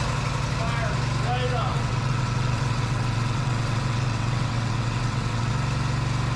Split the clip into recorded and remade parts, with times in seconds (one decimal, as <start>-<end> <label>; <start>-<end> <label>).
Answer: 0.0-1.7 recorded; 1.7-5.5 remade; 5.5-6.4 recorded